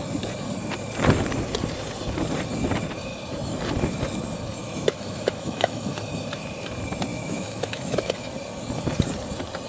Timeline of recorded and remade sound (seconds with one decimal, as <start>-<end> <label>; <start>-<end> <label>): 0.0-4.6 recorded; 4.6-6.1 remade; 6.1-7.1 recorded; 7.1-8.3 remade; 8.3-9.7 recorded